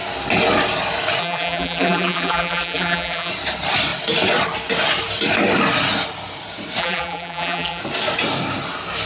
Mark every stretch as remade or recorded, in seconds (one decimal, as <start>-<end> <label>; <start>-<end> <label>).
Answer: 0.0-1.2 recorded; 1.2-3.3 remade; 3.3-6.8 recorded; 6.8-7.8 remade; 7.8-9.1 recorded